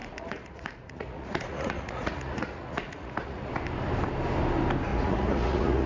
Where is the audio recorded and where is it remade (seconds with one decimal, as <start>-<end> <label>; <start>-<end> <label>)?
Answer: 0.0-3.5 remade; 3.5-4.9 recorded; 4.9-5.9 remade